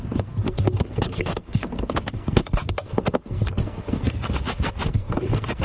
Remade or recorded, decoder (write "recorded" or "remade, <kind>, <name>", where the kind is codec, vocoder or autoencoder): remade, codec, SNAC